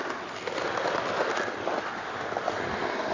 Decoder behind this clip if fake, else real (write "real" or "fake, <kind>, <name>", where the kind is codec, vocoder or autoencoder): real